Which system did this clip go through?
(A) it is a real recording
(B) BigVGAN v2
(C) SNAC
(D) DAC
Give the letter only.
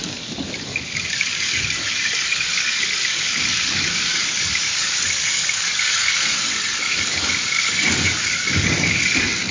D